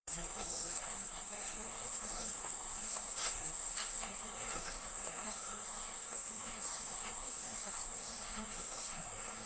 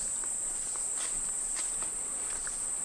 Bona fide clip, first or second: second